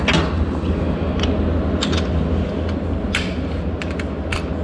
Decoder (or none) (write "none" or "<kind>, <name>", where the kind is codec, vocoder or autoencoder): none